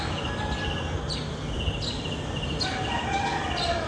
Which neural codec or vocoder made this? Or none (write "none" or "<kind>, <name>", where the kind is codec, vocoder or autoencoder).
none